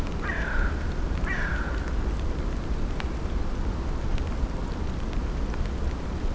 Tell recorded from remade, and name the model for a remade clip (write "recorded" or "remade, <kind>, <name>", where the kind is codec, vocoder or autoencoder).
remade, vocoder, BigVGAN v2